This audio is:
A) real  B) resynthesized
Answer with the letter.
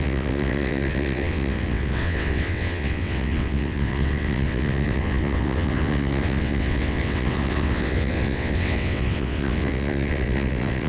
B